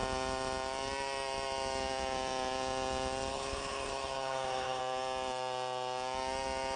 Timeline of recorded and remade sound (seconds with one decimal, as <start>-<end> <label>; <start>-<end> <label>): 0.0-3.3 recorded; 3.3-4.8 remade; 4.8-6.8 recorded